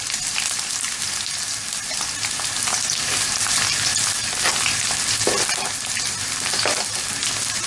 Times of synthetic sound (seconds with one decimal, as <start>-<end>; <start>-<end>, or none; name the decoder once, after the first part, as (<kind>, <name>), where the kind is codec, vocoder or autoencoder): 2.7-3.3 (codec, DAC)